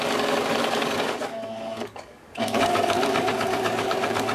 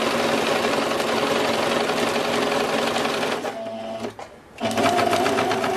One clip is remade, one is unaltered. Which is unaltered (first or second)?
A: second